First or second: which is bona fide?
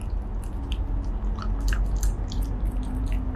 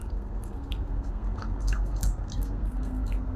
first